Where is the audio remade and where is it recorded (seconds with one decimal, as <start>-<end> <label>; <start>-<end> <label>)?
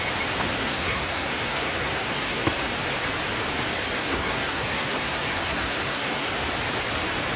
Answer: 0.0-0.6 recorded; 0.6-2.7 remade; 2.7-4.0 recorded; 4.0-6.4 remade; 6.4-7.4 recorded